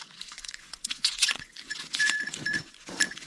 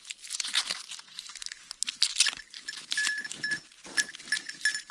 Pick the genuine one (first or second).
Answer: second